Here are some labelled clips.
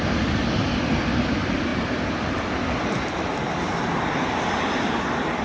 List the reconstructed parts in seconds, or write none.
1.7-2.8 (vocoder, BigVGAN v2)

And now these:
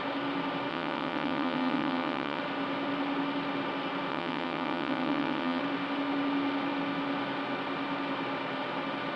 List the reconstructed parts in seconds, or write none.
0.7-2.4 (vocoder, WaveNeXt); 4.1-5.6

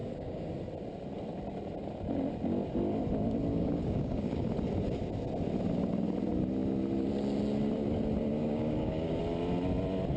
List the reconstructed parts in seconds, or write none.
0.0-0.5 (codec, DAC); 3.5-4.5; 8.4-9.2

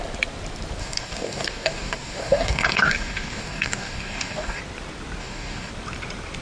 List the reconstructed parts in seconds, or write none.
0.8-4.6 (codec, DAC); 5.2-5.7